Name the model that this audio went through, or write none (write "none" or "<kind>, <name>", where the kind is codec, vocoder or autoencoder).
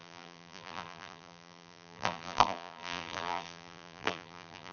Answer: vocoder, BigVGAN v2